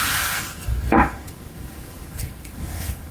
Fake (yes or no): yes